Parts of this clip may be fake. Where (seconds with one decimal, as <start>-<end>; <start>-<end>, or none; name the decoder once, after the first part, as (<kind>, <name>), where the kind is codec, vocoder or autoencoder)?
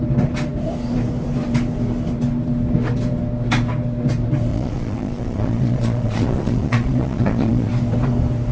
4.5-7.7 (vocoder, Vocos)